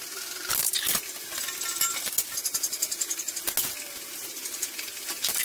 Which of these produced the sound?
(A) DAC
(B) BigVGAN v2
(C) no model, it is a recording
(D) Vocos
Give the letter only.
C